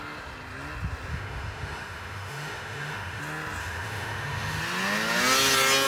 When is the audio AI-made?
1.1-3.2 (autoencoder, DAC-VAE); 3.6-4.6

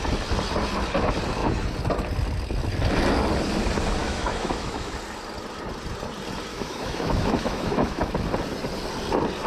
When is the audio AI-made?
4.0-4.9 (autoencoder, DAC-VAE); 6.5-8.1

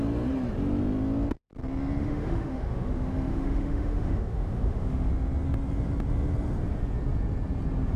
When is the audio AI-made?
2.0-5.1 (autoencoder, DAC-VAE)